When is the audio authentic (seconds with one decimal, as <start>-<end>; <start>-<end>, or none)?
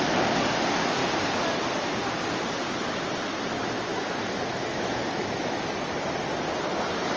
0.0-3.9; 5.8-7.2